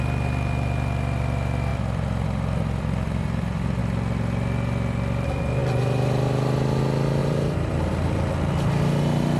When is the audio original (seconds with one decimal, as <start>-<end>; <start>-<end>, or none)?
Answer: 0.0-7.2; 7.8-9.4